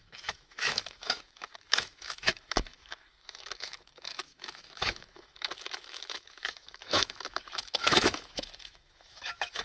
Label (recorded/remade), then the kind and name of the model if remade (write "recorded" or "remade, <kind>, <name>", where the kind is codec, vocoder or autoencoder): remade, autoencoder, DAC-VAE